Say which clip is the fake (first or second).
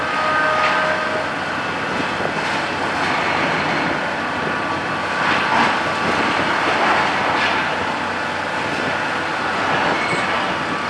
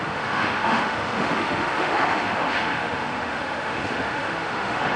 second